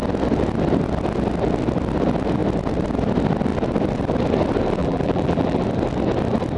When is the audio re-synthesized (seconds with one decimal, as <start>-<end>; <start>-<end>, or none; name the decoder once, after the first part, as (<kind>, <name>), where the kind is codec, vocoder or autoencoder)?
4.8-5.6 (vocoder, BigVGAN v2)